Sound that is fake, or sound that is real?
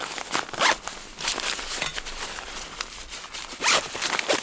real